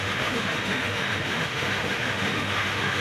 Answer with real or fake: fake